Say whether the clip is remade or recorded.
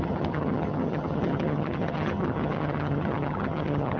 remade